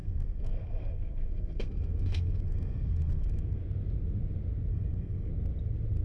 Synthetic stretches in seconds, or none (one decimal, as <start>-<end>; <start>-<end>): 0.0-3.6; 4.7-5.3